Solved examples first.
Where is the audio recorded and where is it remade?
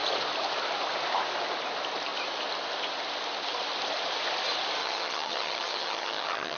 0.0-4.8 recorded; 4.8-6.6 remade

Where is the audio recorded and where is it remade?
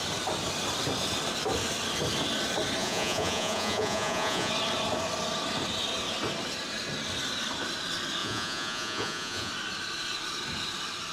0.0-2.8 recorded; 2.8-4.5 remade; 4.5-8.2 recorded; 8.2-9.5 remade; 9.5-11.1 recorded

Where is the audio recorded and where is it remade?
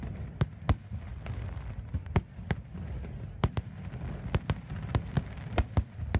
0.0-6.2 recorded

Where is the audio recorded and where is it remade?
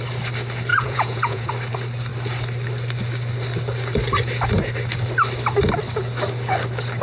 0.0-0.7 recorded; 0.7-1.5 remade; 1.5-7.0 recorded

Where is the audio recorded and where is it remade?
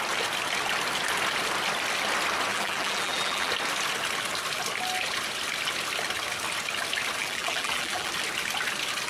0.0-2.5 recorded; 2.5-3.5 remade; 3.5-7.2 recorded; 7.2-8.1 remade; 8.1-9.1 recorded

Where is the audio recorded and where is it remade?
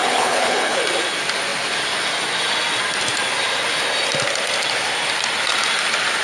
0.0-0.8 remade; 0.8-6.2 recorded